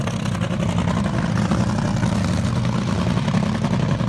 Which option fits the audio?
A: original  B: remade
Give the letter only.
A